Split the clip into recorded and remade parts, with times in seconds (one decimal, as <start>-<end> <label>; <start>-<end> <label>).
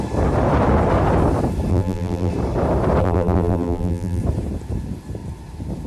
0.0-1.7 recorded; 1.7-2.3 remade; 2.3-3.0 recorded; 3.0-4.2 remade; 4.2-5.9 recorded